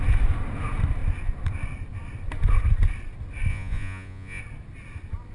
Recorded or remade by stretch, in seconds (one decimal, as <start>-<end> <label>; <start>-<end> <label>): 0.0-3.5 recorded; 3.5-4.4 remade; 4.4-5.3 recorded